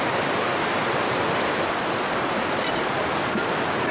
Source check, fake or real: real